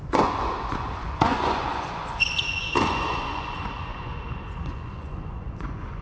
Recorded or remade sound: remade